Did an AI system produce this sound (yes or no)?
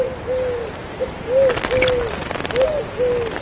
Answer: no